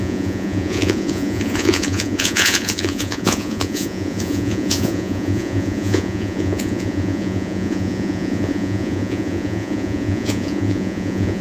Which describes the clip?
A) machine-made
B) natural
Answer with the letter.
A